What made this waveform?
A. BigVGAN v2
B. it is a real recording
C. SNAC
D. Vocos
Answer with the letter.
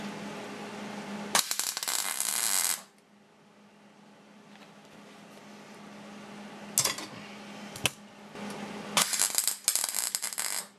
B